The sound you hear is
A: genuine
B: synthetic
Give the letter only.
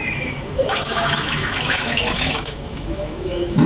B